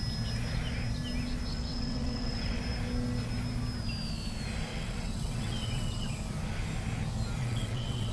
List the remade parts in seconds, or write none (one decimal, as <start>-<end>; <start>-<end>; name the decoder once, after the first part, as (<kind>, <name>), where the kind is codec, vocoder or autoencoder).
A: 1.5-2.6 (vocoder, WaveNeXt); 4.7-6.1; 7.4-8.1